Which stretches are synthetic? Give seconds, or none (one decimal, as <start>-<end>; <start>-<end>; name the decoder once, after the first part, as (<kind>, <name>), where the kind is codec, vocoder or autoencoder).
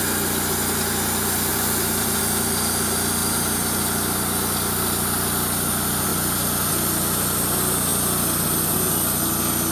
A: 1.5-2.2 (vocoder, BigVGAN v2); 3.2-3.8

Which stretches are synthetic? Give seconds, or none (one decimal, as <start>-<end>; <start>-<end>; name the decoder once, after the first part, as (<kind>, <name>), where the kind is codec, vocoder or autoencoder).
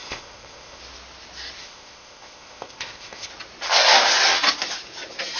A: 0.0-0.8 (codec, ZipCodec); 1.6-3.3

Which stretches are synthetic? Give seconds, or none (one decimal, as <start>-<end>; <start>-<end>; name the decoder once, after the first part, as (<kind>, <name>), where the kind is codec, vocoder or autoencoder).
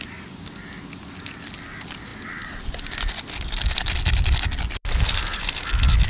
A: none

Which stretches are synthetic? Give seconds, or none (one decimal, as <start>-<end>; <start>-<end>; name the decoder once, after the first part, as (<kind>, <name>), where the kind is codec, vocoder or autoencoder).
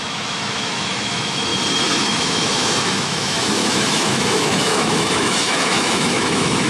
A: 0.0-1.5 (autoencoder, DAC-VAE); 2.0-6.7